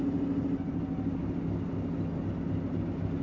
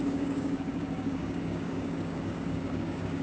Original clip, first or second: first